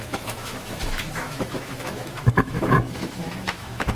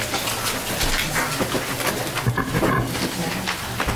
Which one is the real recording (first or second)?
second